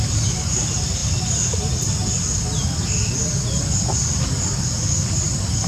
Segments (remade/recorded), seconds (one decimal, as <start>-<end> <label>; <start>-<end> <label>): 0.0-1.0 remade; 1.0-4.4 recorded; 4.4-5.7 remade